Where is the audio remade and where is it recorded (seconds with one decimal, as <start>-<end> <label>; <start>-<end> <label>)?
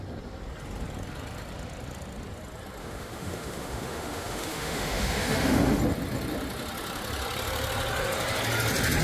0.0-2.8 recorded; 2.8-5.8 remade; 5.8-9.0 recorded